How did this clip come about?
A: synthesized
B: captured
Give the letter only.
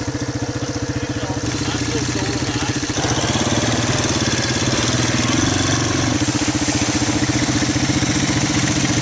B